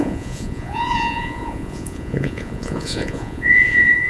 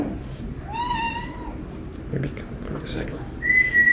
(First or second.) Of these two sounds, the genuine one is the second